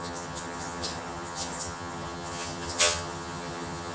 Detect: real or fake fake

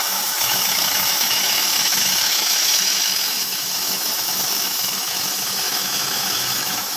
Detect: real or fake fake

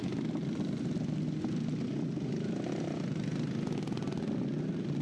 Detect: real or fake real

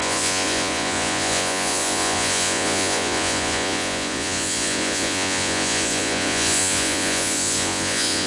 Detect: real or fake fake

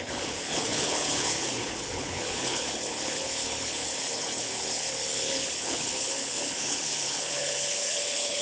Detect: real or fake fake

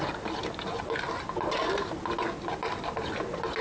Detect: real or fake real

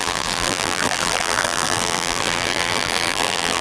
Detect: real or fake fake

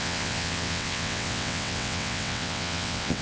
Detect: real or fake fake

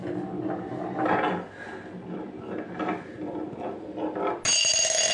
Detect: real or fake real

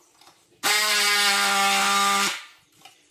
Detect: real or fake real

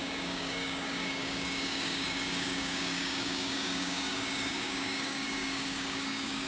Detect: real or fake fake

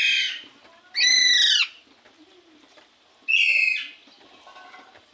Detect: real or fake real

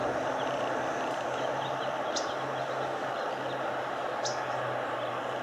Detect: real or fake real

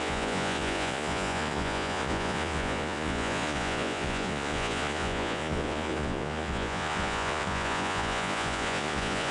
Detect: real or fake fake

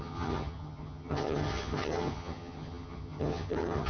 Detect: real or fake fake